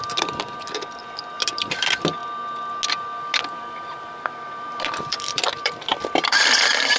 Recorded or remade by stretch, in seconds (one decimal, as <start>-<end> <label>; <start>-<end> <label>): 0.0-2.2 remade; 2.2-3.4 recorded; 3.4-7.0 remade

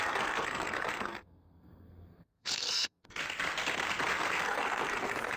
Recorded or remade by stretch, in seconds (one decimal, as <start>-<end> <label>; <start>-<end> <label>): 0.0-3.2 remade; 3.2-4.1 recorded; 4.1-5.4 remade

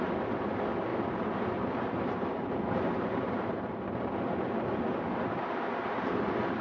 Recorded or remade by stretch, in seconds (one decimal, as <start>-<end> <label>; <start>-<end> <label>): 0.0-0.9 recorded; 0.9-3.6 remade; 3.6-6.6 recorded

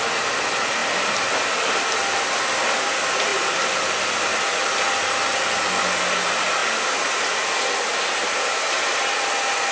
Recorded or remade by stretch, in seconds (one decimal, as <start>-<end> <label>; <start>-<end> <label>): 0.0-9.7 recorded

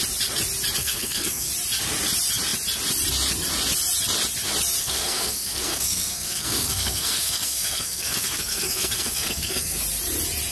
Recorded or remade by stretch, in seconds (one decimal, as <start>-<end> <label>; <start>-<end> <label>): 0.0-0.8 recorded; 0.8-1.5 remade; 1.5-4.8 recorded; 4.8-9.8 remade; 9.8-10.5 recorded